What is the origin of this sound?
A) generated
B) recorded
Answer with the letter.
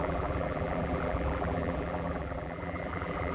A